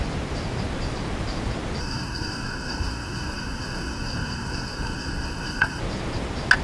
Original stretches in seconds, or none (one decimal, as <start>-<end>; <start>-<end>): 0.0-1.8; 5.8-6.6